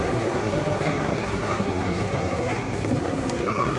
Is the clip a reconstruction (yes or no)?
yes